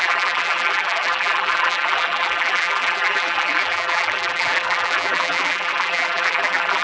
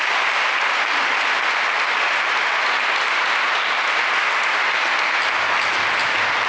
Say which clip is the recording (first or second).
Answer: second